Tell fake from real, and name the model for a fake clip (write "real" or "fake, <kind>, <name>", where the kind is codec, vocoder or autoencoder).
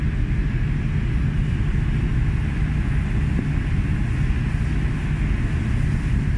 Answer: real